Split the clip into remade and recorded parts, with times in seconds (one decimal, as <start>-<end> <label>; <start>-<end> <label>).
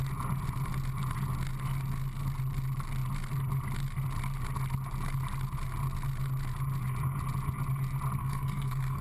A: 0.0-8.2 recorded; 8.2-9.0 remade